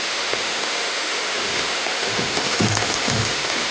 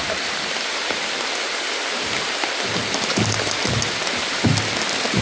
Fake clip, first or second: first